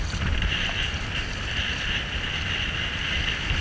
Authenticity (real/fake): fake